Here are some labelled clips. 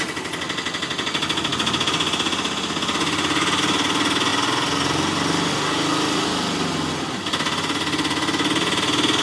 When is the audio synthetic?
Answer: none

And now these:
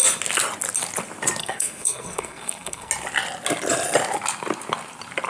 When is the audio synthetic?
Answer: 1.4-2.9

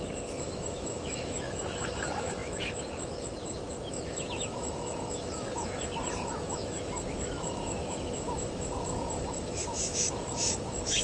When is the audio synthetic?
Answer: 0.0-11.0